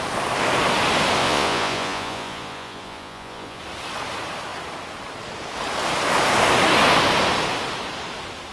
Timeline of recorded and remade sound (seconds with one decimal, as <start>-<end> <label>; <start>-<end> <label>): 0.0-1.2 recorded; 1.2-3.6 remade; 3.6-8.5 recorded